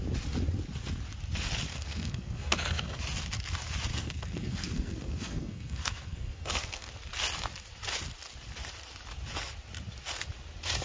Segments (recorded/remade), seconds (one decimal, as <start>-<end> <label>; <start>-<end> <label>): 0.0-1.7 recorded; 1.7-3.0 remade; 3.0-3.9 recorded; 3.9-6.9 remade; 6.9-10.8 recorded

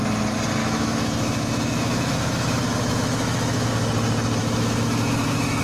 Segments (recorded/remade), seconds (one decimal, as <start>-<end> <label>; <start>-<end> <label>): 0.0-0.6 recorded; 0.6-3.7 remade; 3.7-4.4 recorded; 4.4-5.6 remade